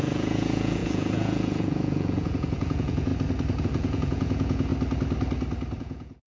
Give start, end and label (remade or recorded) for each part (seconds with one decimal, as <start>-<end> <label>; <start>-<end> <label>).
0.0-3.1 remade; 3.1-3.6 recorded; 3.6-4.7 remade; 4.7-5.8 recorded; 5.8-6.3 remade